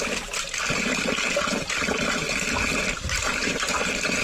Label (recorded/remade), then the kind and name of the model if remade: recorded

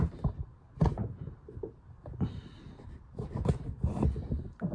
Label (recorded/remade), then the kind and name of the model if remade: remade, vocoder, BigVGAN v2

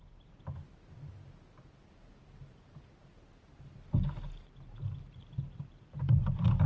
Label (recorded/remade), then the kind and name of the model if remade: recorded